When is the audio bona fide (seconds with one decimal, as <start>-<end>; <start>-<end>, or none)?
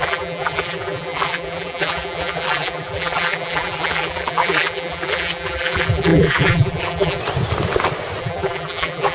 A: 7.2-8.2